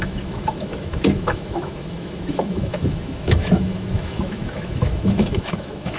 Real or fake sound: fake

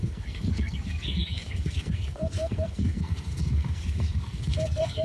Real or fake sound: fake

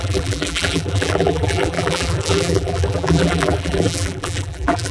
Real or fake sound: fake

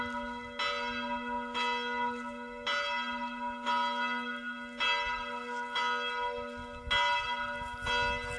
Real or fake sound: real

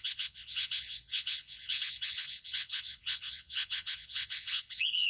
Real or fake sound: fake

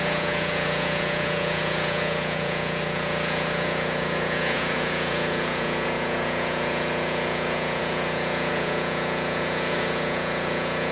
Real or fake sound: fake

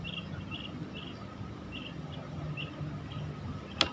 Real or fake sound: real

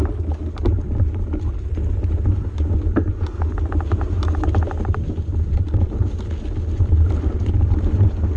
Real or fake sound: real